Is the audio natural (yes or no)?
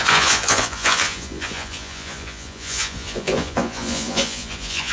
no